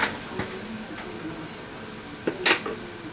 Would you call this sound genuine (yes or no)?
yes